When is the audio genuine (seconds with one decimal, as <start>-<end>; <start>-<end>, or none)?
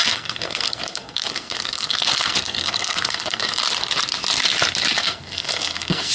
3.6-5.0